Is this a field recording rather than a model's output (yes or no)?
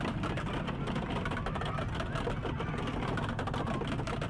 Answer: yes